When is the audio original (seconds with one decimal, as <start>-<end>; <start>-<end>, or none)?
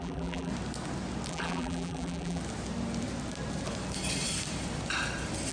0.5-1.3; 2.4-5.5